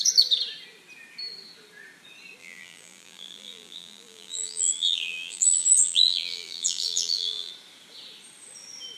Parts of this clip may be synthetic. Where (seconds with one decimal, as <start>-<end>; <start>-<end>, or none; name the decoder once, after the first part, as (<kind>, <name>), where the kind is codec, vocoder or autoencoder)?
2.4-7.5 (vocoder, BigVGAN v2)